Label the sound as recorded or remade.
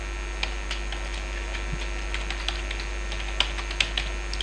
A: recorded